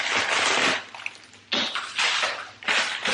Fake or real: real